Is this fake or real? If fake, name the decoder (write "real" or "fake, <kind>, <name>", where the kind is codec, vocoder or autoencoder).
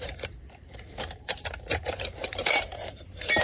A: fake, vocoder, BigVGAN v2